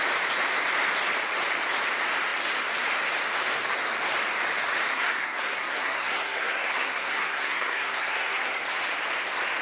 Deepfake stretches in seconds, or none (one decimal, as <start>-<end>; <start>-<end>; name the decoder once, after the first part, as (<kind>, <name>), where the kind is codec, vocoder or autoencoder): 4.9-8.6 (codec, SNAC)